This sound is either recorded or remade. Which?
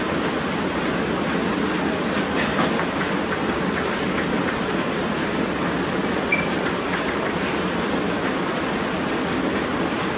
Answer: recorded